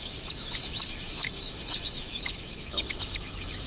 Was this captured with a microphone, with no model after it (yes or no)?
no